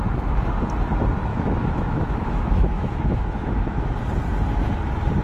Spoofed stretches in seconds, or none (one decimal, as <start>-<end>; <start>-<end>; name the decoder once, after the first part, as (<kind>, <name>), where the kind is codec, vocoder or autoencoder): 1.3-4.0 (autoencoder, DAC-VAE)

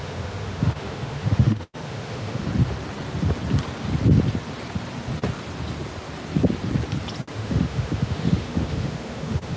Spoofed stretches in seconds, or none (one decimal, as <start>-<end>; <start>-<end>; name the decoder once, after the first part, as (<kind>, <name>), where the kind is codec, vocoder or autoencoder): 0.0-2.4 (autoencoder, DAC-VAE); 7.3-9.6

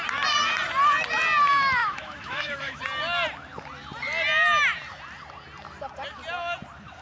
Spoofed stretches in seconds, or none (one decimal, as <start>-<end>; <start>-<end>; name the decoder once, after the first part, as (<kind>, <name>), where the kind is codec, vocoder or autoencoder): 1.8-2.8 (autoencoder, DAC-VAE)